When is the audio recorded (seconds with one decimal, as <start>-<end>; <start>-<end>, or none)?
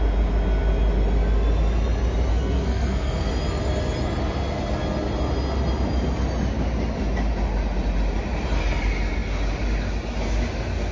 0.0-2.3; 3.3-10.9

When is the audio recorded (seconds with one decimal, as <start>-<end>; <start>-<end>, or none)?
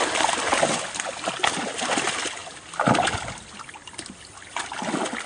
0.0-5.3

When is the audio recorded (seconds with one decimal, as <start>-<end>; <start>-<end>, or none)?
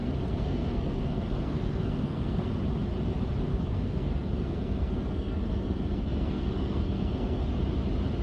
2.5-3.5; 7.5-8.2